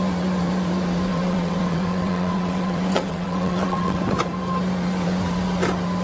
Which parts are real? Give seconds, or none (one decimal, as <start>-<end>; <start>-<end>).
0.0-1.1; 4.0-6.0